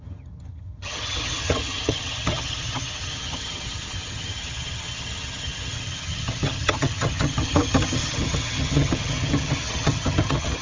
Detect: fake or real fake